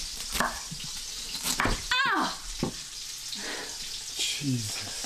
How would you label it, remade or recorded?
recorded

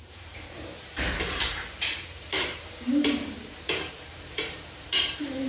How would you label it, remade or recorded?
remade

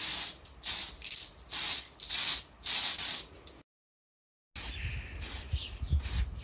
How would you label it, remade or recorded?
recorded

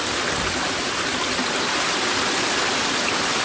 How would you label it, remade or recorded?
recorded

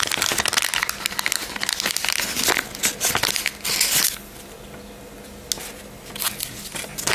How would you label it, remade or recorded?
recorded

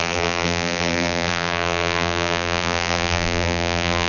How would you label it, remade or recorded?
remade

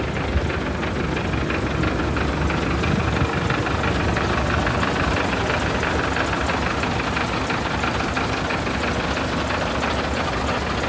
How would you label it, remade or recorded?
recorded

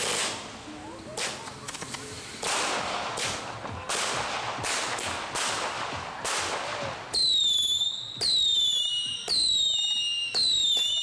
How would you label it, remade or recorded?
recorded